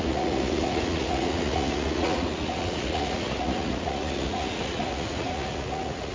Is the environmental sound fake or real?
fake